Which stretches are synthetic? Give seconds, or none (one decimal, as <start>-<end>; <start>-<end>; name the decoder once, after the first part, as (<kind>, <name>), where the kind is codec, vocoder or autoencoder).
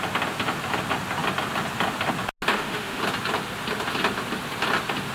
2.5-3.0 (autoencoder, DAC-VAE)